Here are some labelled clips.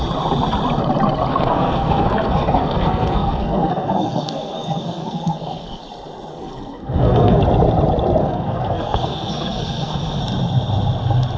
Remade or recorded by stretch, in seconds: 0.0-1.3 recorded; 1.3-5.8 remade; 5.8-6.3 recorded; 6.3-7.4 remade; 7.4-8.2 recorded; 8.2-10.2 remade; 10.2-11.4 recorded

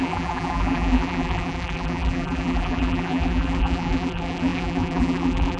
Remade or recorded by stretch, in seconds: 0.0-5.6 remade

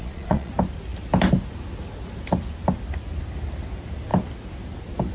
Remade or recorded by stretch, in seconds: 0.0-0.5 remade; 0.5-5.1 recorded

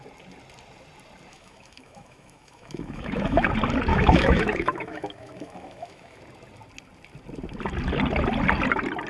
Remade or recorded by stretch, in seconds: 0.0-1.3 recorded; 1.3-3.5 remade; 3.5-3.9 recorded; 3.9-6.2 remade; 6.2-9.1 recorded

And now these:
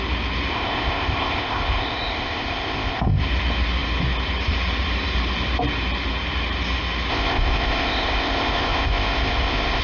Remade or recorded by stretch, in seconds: 0.0-0.5 recorded; 0.5-3.2 remade; 3.2-7.1 recorded; 7.1-9.8 remade

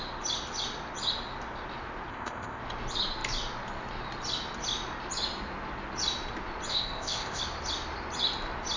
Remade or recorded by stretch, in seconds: 0.0-2.1 recorded; 2.1-2.6 remade; 2.6-6.7 recorded; 6.7-7.4 remade; 7.4-8.8 recorded

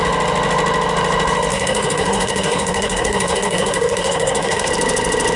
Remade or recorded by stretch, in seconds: 0.0-1.5 recorded; 1.5-4.7 remade; 4.7-5.4 recorded